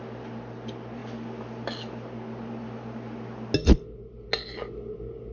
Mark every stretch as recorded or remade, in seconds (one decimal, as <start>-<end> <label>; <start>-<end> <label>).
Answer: 0.0-5.3 recorded